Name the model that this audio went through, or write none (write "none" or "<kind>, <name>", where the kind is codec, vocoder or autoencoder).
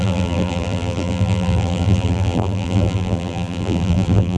vocoder, BigVGAN v2